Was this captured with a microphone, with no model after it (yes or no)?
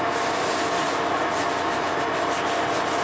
yes